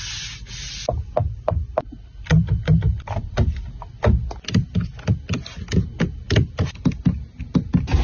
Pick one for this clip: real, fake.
real